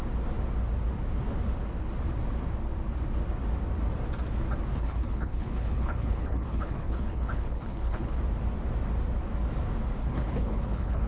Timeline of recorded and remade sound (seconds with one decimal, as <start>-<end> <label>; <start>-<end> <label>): 0.0-4.7 recorded; 4.7-8.2 remade; 8.2-10.0 recorded; 10.0-11.1 remade

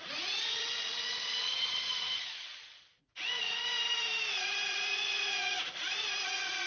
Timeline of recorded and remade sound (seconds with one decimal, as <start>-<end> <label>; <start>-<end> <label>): 0.0-3.6 remade; 3.6-4.3 recorded; 4.3-6.7 remade

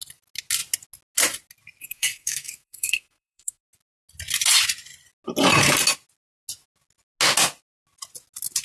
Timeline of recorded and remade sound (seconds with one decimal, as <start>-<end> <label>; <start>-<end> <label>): 0.0-1.8 recorded; 1.8-3.6 remade; 3.6-8.6 recorded

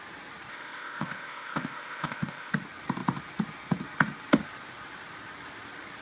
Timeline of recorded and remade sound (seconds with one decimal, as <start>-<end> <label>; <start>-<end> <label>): 0.0-0.5 recorded; 0.5-2.5 remade; 2.5-6.0 recorded

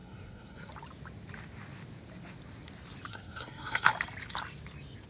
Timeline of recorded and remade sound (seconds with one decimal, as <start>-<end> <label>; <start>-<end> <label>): 0.0-0.7 remade; 0.7-3.1 recorded; 3.1-3.9 remade; 3.9-5.1 recorded

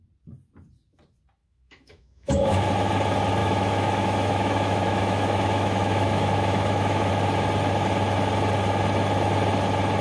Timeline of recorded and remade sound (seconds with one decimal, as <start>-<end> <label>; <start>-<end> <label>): 0.0-1.4 recorded; 1.4-2.7 remade; 2.7-3.4 recorded; 3.4-7.1 remade; 7.1-10.0 recorded

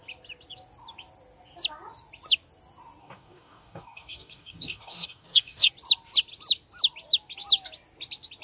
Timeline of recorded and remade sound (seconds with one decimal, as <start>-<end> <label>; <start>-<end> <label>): 0.0-3.0 recorded; 3.0-5.7 remade; 5.7-8.4 recorded

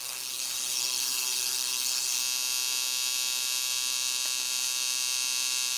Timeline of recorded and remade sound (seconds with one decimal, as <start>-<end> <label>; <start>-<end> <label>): 0.0-2.2 remade; 2.2-5.8 recorded